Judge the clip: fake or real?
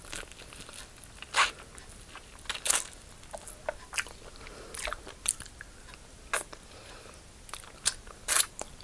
real